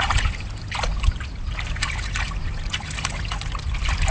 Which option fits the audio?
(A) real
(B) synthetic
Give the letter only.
A